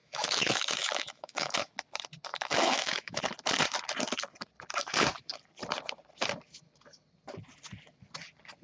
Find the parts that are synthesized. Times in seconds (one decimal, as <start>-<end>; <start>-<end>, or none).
0.0-1.7; 2.3-3.2